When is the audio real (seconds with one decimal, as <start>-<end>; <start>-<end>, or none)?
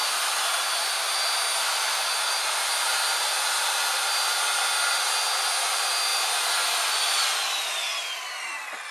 0.0-8.9